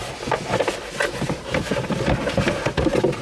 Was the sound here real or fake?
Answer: real